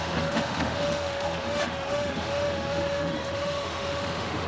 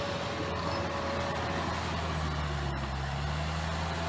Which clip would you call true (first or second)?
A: second